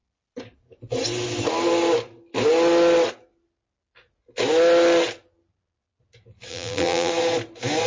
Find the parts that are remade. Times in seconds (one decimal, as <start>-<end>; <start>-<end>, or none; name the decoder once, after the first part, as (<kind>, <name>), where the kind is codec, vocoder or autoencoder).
6.5-7.1 (vocoder, BigVGAN v2)